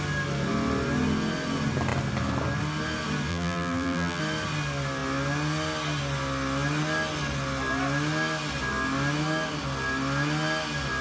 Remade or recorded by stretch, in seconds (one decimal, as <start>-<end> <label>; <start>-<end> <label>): 0.0-3.3 recorded; 3.3-4.2 remade; 4.2-11.0 recorded